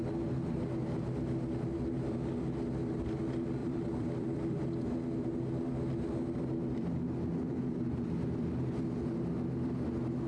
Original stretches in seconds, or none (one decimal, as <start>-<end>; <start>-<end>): 0.0-3.6; 4.6-10.3